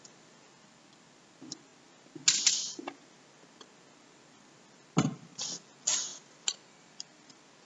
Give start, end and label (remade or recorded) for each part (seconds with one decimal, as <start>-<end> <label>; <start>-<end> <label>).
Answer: 0.0-7.7 recorded

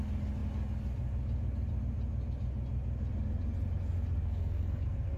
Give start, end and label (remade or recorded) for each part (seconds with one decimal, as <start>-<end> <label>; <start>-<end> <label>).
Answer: 0.0-4.2 recorded; 4.2-5.2 remade

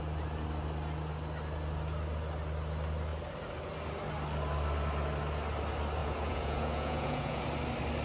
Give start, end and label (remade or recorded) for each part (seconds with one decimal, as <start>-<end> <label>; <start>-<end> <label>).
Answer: 0.0-6.0 recorded; 6.0-7.4 remade; 7.4-8.0 recorded

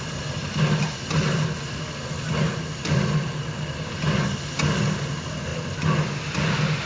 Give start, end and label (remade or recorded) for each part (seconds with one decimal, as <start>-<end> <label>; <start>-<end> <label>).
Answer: 0.0-6.9 recorded

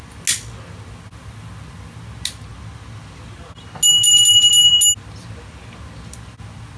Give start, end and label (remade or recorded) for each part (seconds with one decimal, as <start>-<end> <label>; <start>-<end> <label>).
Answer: 0.0-6.8 recorded